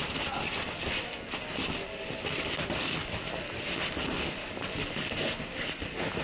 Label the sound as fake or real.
real